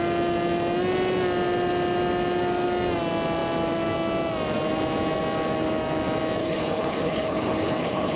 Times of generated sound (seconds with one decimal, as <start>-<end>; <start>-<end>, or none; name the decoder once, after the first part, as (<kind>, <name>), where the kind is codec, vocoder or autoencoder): 6.4-8.2 (codec, HILCodec)